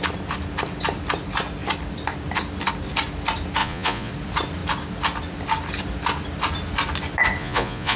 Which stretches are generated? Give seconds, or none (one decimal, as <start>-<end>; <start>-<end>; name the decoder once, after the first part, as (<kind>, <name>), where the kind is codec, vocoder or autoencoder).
3.6-4.1 (vocoder, Vocos); 7.4-8.0